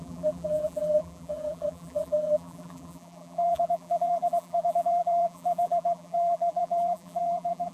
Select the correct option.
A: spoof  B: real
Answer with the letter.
A